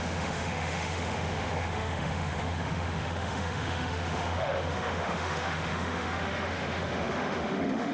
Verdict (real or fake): fake